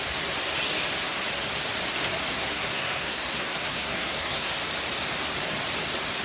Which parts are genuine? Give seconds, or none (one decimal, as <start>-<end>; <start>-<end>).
0.0-2.3; 4.5-6.2